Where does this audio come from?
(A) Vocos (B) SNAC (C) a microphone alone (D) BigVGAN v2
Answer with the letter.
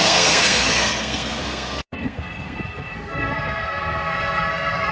B